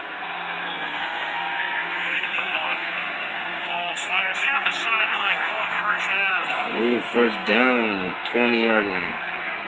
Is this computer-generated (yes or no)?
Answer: yes